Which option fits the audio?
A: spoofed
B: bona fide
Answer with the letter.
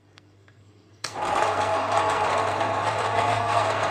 A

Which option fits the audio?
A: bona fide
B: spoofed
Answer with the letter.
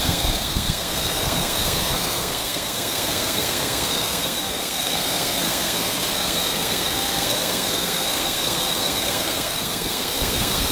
B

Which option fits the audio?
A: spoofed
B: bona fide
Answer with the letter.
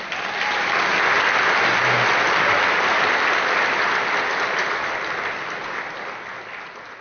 B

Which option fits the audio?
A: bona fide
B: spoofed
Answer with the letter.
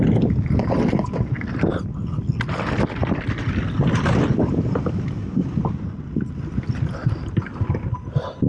A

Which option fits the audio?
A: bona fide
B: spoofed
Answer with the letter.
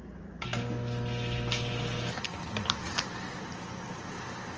A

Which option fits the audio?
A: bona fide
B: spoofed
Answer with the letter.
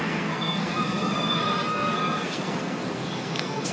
B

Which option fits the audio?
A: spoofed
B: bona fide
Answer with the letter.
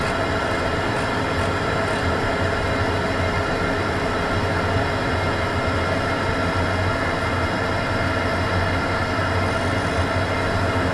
B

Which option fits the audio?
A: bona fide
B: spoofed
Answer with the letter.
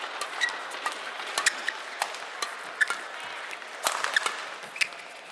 A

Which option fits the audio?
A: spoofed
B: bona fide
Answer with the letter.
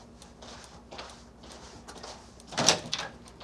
B